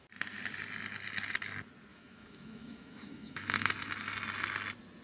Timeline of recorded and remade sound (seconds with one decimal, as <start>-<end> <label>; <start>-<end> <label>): 0.0-1.9 recorded; 1.9-3.7 remade; 3.7-5.0 recorded

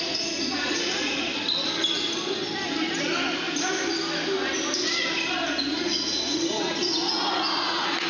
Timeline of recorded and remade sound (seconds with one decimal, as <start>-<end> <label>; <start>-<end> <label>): 0.0-1.3 remade; 1.3-5.7 recorded; 5.7-8.1 remade